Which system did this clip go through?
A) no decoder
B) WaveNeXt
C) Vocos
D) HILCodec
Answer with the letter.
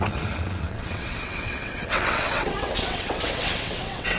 B